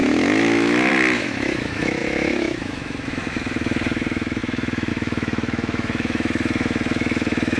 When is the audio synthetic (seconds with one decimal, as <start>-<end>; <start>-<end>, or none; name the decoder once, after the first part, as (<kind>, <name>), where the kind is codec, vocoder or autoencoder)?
0.0-7.6 (autoencoder, DAC-VAE)